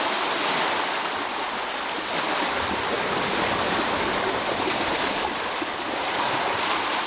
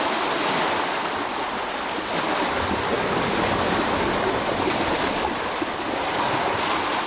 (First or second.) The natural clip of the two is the second